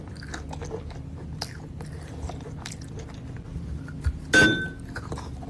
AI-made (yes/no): no